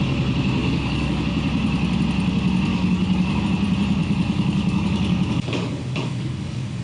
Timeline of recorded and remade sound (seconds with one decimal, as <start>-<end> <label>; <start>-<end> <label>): 0.0-0.6 recorded; 0.6-1.2 remade; 1.2-2.7 recorded; 2.7-3.4 remade; 3.4-4.0 recorded; 4.0-6.8 remade